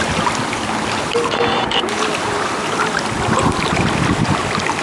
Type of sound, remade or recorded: remade